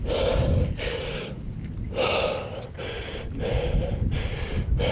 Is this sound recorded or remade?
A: recorded